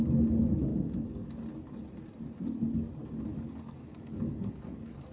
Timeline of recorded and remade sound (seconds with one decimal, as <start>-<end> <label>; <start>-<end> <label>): 0.0-0.7 recorded; 0.7-1.3 remade; 1.3-3.3 recorded; 3.3-5.1 remade